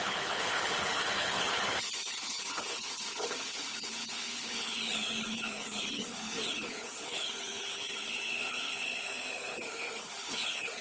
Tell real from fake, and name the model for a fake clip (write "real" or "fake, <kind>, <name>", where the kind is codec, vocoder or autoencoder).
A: fake, codec, HILCodec